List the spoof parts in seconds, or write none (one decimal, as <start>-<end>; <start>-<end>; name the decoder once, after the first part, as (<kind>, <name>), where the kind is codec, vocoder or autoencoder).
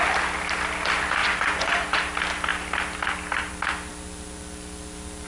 1.2-2.0 (vocoder, Vocos)